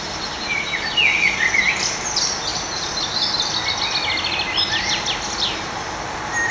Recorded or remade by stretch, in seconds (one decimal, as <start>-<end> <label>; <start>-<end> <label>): 0.0-6.5 recorded